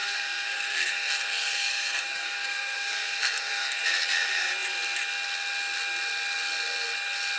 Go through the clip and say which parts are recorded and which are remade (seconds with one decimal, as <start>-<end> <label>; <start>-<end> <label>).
0.0-3.8 remade; 3.8-7.4 recorded